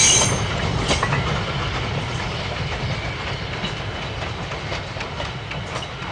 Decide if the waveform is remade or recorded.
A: recorded